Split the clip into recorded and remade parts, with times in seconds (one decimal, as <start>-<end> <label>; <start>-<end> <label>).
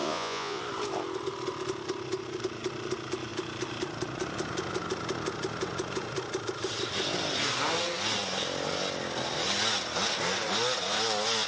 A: 0.0-0.6 remade; 0.6-11.5 recorded